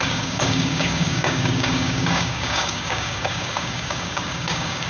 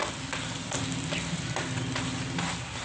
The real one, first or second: second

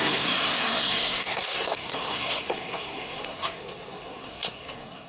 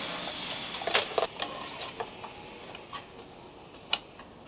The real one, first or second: second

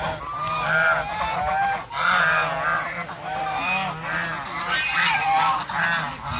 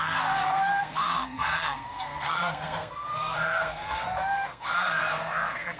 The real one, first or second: first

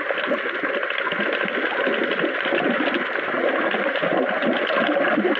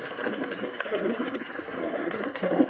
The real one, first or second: first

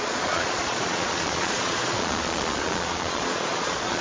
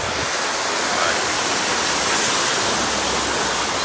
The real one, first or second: second